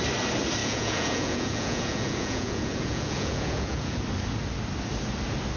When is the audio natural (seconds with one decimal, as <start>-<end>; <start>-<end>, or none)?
0.0-0.6; 4.0-5.6